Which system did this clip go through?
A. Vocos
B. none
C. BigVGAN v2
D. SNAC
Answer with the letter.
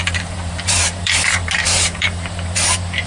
C